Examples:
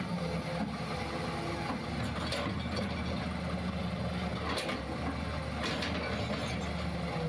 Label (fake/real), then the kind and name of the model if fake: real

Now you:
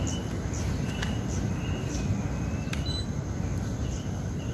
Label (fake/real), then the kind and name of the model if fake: real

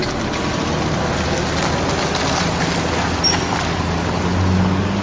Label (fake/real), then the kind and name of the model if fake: real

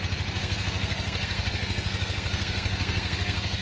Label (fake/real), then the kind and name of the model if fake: fake, codec, SNAC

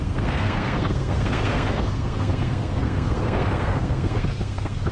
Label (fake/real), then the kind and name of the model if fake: fake, codec, SNAC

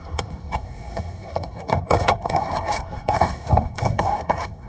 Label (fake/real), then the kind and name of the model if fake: fake, codec, SNAC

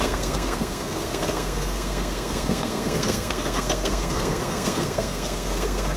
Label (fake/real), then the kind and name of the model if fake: fake, codec, SNAC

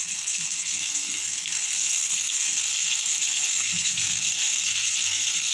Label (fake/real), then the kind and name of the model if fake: fake, codec, SNAC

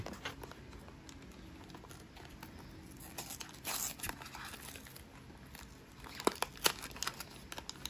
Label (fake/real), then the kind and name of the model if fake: real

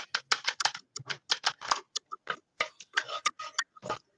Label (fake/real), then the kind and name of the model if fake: real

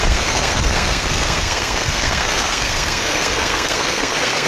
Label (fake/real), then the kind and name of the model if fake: fake, codec, SNAC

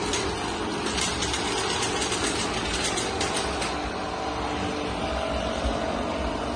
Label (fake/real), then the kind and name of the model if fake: real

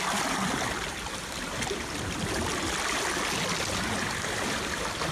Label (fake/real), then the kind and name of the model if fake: real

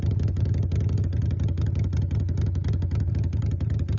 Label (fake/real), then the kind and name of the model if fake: real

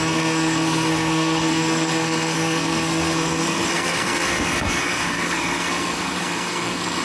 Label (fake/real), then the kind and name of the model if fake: fake, codec, SNAC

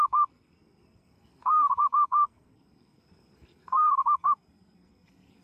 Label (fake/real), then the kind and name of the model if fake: fake, codec, SNAC